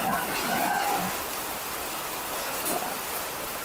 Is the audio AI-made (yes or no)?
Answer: no